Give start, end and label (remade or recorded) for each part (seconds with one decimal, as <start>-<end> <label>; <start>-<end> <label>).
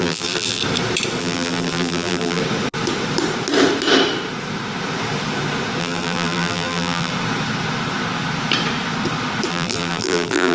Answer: 0.0-0.6 remade; 0.6-1.2 recorded; 1.2-2.4 remade; 2.4-5.8 recorded; 5.8-7.1 remade; 7.1-9.5 recorded; 9.5-10.5 remade